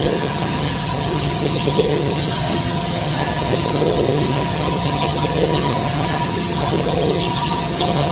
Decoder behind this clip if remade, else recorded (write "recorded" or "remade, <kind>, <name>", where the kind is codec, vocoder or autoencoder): remade, vocoder, HiFi-GAN